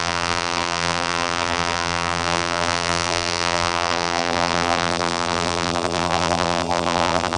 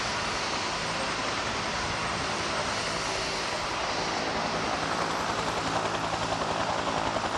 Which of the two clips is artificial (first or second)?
first